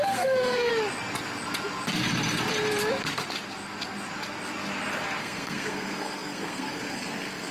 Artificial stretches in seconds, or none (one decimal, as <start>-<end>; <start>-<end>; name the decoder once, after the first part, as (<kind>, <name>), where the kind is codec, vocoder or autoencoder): 0.0-0.7 (codec, SNAC); 5.2-7.5